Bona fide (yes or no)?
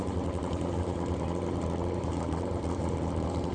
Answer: yes